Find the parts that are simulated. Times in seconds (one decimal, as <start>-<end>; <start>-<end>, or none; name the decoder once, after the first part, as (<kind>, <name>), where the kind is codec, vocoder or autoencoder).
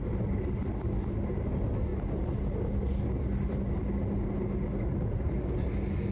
none